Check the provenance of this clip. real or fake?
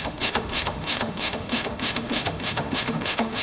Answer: fake